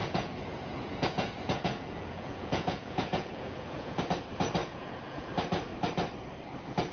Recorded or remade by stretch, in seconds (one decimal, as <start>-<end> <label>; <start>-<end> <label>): 0.0-4.0 remade; 4.0-4.6 recorded; 4.6-5.3 remade; 5.3-6.9 recorded